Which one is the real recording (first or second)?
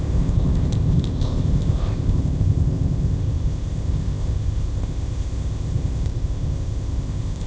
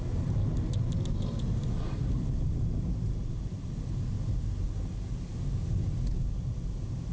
second